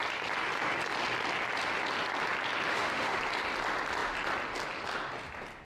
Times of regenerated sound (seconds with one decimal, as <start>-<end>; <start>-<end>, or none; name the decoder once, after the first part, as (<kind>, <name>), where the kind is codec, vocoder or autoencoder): 2.7-3.2 (autoencoder, DAC-VAE)